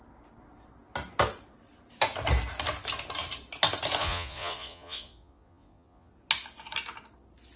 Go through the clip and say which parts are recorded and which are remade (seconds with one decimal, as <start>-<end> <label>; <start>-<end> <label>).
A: 0.0-4.0 recorded; 4.0-6.1 remade; 6.1-7.6 recorded

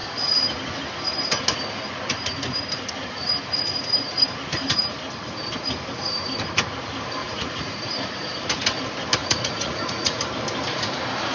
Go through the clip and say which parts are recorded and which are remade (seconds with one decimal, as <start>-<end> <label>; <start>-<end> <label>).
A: 0.0-7.2 recorded; 7.2-7.8 remade; 7.8-9.2 recorded; 9.2-10.2 remade; 10.2-11.3 recorded

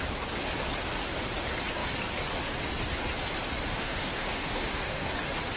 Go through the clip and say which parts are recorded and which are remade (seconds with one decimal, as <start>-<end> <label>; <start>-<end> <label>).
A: 0.0-3.7 recorded; 3.7-5.1 remade; 5.1-5.6 recorded

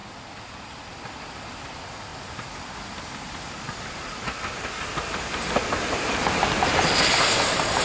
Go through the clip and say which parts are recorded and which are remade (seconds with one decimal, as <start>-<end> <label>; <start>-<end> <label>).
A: 0.0-0.6 recorded; 0.6-2.1 remade; 2.1-6.8 recorded; 6.8-7.8 remade

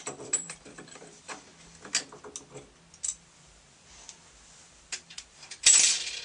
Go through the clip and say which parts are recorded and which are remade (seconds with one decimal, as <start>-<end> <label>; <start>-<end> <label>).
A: 0.0-1.5 remade; 1.5-4.5 recorded; 4.5-6.2 remade